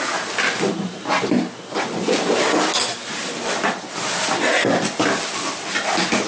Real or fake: real